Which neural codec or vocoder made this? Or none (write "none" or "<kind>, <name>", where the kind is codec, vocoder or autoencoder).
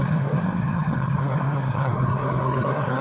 codec, SNAC